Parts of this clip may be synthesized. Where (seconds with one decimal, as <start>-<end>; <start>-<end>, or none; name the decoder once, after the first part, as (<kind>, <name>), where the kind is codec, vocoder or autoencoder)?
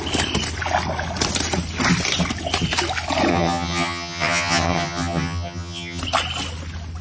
3.3-6.0 (vocoder, HiFi-GAN)